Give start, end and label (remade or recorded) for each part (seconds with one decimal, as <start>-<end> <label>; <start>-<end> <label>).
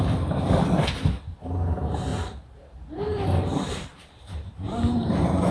0.0-2.1 recorded; 2.1-5.5 remade